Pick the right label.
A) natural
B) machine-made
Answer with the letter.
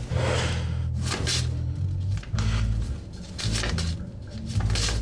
A